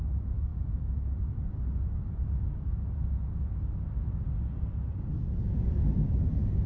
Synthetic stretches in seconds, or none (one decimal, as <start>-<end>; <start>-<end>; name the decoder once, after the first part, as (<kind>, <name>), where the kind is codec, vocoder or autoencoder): none